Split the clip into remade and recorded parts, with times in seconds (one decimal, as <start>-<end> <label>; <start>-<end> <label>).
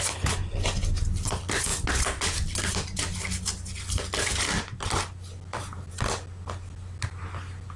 0.0-7.8 recorded